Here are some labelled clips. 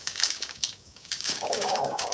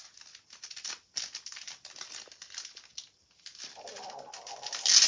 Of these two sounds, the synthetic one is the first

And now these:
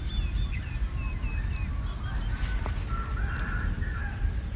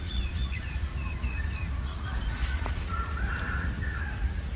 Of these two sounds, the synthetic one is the second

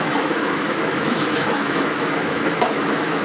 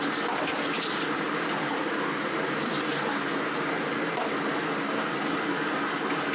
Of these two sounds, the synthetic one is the first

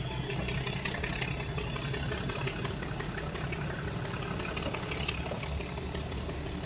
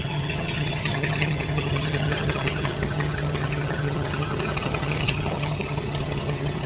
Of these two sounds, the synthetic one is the second